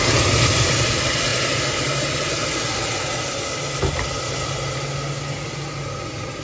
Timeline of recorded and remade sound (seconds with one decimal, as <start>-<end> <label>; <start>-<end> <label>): 0.0-6.4 recorded